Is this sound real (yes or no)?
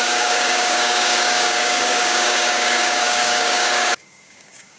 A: no